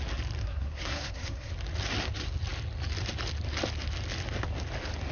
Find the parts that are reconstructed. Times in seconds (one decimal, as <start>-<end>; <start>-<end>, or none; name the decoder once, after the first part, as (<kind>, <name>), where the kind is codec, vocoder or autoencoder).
0.4-1.5 (codec, SNAC)